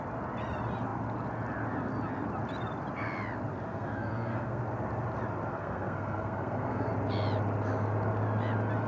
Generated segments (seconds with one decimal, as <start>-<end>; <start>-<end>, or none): 3.7-4.6; 5.5-6.9